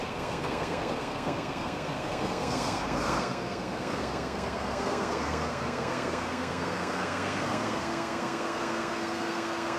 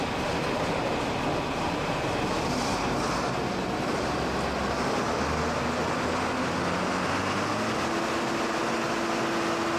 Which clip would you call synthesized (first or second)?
first